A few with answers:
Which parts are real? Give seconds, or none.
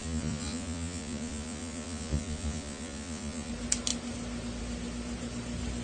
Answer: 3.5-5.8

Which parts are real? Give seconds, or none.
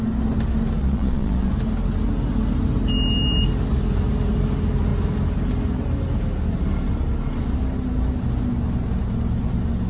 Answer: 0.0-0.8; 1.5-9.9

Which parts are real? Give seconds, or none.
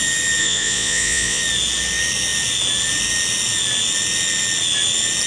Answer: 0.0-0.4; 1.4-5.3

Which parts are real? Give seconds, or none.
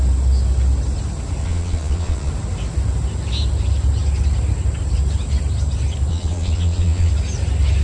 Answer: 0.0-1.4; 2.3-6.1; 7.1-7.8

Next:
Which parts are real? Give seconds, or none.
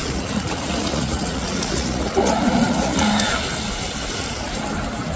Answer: 3.1-5.2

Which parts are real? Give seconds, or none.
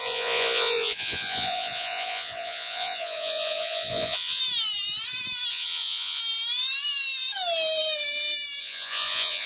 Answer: 4.4-5.5; 6.2-8.6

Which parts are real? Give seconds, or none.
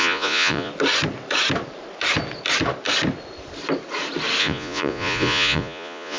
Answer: 0.7-4.4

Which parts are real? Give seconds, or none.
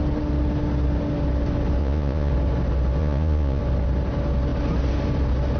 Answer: 0.0-1.8; 2.3-3.0; 3.6-5.6